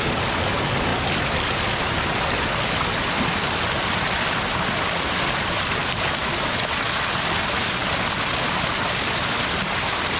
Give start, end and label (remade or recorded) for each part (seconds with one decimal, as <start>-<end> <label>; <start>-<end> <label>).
0.0-10.2 recorded